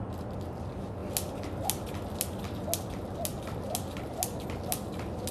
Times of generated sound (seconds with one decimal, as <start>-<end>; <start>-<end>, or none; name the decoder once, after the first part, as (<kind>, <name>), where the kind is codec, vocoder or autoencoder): none